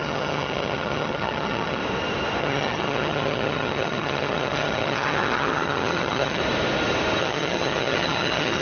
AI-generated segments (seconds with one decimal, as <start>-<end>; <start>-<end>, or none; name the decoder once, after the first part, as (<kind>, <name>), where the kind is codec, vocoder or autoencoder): 0.0-1.8 (vocoder, HiFi-GAN); 2.4-6.4; 7.2-8.6